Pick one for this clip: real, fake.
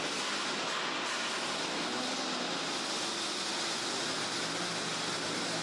real